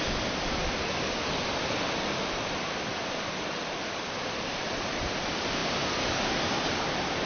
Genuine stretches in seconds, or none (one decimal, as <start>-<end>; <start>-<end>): none